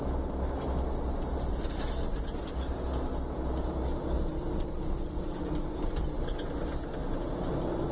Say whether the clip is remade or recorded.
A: recorded